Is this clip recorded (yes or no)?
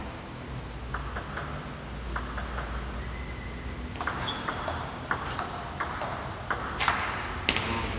yes